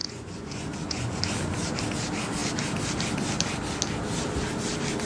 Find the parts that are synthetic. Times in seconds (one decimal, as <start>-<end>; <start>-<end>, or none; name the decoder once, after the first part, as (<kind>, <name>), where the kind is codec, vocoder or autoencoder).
0.0-1.2 (vocoder, Vocos)